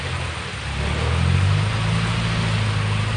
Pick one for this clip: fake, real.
real